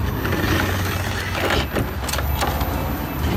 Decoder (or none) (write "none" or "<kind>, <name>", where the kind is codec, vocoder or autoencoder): none